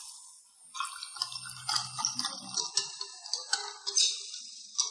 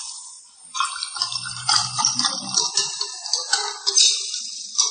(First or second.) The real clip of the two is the first